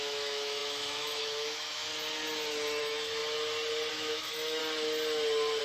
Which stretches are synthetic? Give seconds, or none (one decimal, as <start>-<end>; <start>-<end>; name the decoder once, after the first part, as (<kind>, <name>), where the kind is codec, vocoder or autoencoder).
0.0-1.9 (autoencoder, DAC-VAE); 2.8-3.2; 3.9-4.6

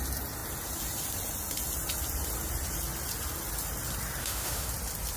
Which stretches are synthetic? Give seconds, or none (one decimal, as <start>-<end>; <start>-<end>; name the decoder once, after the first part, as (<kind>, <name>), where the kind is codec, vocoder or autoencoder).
4.2-4.7 (autoencoder, DAC-VAE)

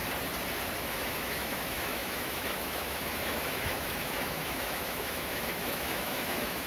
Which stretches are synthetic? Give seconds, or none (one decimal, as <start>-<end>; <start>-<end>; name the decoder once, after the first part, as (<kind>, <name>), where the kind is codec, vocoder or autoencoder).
0.9-6.7 (autoencoder, DAC-VAE)

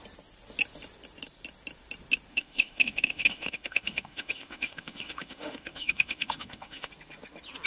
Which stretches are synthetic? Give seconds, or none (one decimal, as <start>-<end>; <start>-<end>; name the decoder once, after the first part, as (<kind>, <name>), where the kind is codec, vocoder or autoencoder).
2.3-6.9 (autoencoder, DAC-VAE)